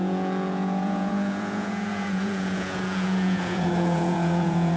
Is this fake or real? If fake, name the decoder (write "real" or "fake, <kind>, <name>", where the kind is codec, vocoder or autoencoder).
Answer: fake, vocoder, Vocos